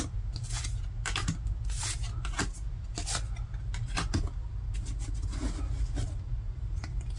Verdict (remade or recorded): recorded